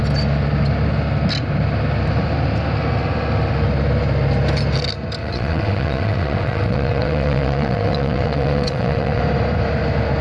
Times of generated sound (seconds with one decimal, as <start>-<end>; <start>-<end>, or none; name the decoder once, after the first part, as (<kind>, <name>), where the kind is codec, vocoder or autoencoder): 5.2-9.2 (vocoder, WaveNeXt)